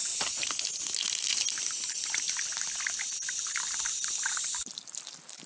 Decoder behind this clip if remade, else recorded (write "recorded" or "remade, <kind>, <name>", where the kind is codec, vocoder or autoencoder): recorded